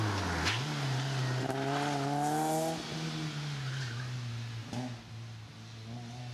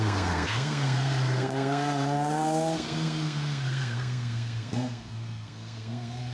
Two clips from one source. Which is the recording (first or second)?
first